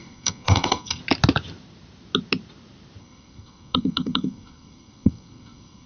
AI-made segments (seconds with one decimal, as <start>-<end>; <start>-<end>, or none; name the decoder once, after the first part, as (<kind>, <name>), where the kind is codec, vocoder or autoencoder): 0.0-1.0 (codec, SNAC); 3.0-5.9